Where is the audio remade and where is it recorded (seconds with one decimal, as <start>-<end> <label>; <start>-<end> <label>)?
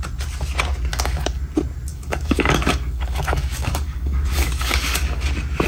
0.0-0.9 recorded; 0.9-1.4 remade; 1.4-1.9 recorded; 1.9-5.3 remade; 5.3-5.7 recorded